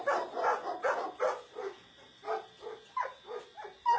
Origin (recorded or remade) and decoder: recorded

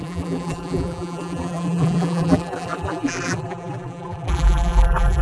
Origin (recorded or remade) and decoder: remade, vocoder, BigVGAN v2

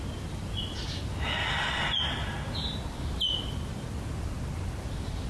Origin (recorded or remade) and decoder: recorded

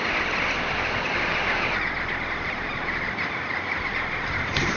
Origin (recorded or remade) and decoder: remade, vocoder, BigVGAN v2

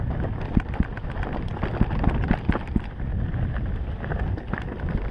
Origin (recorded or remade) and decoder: recorded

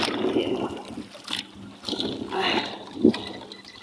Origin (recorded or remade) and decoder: remade, vocoder, BigVGAN v2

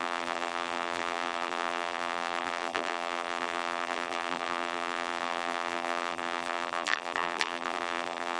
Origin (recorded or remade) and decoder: remade, vocoder, BigVGAN v2